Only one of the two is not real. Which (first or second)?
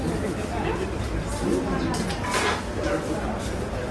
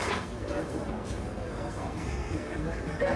second